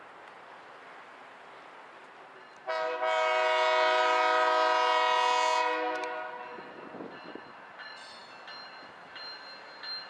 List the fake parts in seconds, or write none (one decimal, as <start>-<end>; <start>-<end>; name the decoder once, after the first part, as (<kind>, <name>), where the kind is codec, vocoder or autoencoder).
none